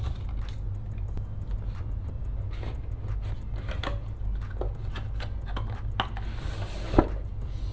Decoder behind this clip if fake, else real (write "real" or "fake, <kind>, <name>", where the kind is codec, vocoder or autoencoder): real